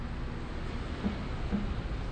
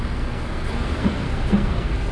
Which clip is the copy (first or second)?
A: second